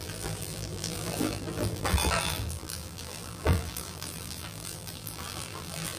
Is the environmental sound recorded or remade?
remade